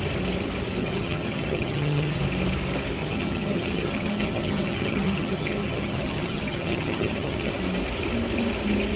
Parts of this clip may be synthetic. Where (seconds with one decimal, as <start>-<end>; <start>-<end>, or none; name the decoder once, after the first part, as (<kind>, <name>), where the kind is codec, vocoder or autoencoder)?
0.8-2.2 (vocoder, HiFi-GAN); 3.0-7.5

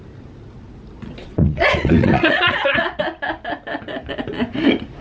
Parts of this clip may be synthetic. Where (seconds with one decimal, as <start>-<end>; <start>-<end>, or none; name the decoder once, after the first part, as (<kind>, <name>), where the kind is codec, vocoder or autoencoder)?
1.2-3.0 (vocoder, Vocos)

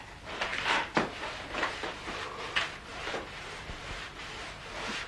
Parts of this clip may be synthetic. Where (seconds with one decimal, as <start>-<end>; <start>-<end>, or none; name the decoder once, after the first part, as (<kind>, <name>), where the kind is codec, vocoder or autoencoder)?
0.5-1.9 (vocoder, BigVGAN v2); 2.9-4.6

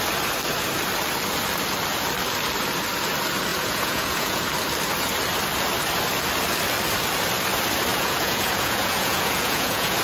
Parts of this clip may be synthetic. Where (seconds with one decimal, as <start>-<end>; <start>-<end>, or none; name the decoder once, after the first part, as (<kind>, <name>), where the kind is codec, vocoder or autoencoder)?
3.5-4.4 (vocoder, Vocos); 7.9-10.0

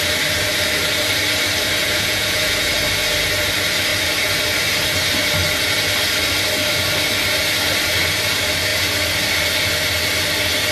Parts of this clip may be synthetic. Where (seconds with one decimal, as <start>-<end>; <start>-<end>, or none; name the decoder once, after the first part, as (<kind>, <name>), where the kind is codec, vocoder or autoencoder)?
1.8-2.7 (vocoder, Vocos)

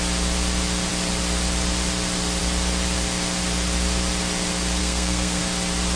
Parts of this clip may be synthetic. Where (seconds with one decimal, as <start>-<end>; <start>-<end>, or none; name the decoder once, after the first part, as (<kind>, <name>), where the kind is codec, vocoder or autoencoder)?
4.8-5.4 (codec, SNAC)